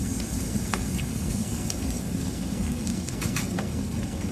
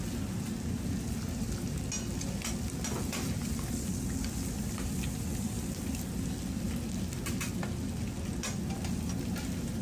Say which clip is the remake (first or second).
first